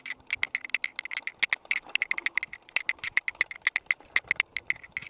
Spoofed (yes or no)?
no